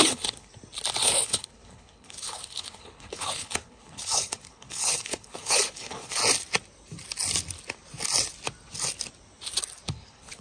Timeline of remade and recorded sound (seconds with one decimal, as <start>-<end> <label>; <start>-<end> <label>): 0.0-0.5 remade; 0.5-1.0 recorded; 1.0-6.2 remade; 6.2-9.9 recorded; 9.9-10.4 remade

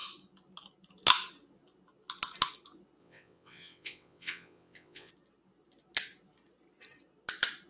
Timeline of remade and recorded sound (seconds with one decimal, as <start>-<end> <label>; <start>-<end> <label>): 0.0-3.0 recorded; 3.0-5.1 remade; 5.1-7.7 recorded

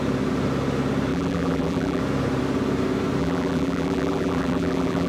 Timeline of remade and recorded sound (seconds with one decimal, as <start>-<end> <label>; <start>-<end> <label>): 0.0-1.1 recorded; 1.1-2.0 remade; 2.0-3.2 recorded; 3.2-5.1 remade